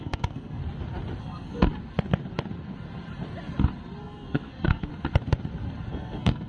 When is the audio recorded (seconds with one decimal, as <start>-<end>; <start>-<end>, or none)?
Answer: 0.6-1.2; 1.7-4.0; 4.9-5.9